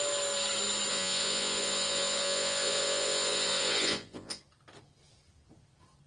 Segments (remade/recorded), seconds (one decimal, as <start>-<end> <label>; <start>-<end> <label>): 0.0-0.9 recorded; 0.9-4.4 remade; 4.4-6.1 recorded